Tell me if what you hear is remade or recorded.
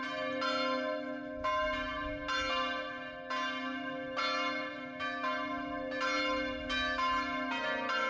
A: recorded